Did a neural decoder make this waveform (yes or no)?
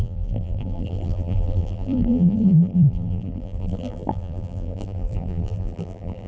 yes